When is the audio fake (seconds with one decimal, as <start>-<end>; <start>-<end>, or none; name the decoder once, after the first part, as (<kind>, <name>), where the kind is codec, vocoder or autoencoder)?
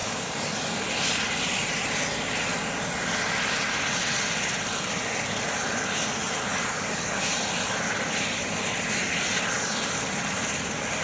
0.0-0.5 (codec, DAC); 6.5-7.3